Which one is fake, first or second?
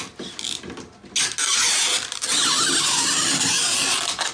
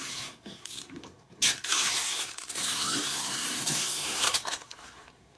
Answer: second